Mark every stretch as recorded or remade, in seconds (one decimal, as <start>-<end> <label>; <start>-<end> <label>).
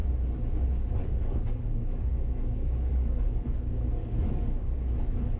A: 0.0-1.0 recorded; 1.0-5.4 remade